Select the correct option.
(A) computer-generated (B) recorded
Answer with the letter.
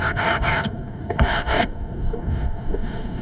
A